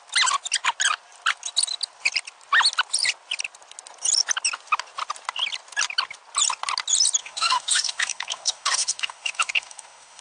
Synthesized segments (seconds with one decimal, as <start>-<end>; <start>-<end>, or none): 7.2-10.2